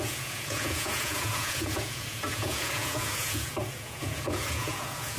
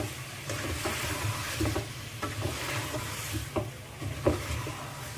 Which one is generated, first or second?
first